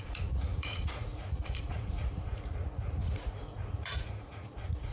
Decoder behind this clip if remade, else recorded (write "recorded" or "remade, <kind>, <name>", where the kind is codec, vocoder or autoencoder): remade, vocoder, Vocos